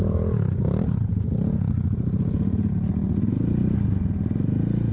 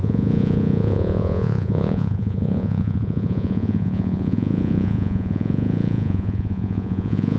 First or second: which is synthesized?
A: second